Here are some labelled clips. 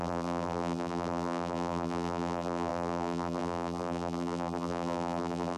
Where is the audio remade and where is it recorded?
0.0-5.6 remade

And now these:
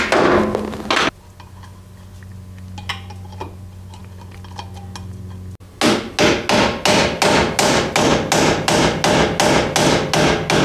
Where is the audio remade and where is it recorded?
0.0-10.6 recorded

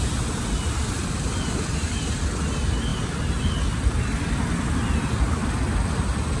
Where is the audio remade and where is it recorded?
0.0-6.4 recorded

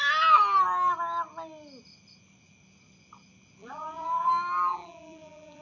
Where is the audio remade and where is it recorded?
0.0-3.6 recorded; 3.6-4.3 remade; 4.3-4.7 recorded; 4.7-5.6 remade

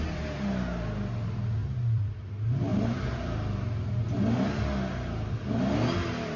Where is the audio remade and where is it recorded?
0.0-1.6 recorded; 1.6-2.1 remade; 2.1-6.4 recorded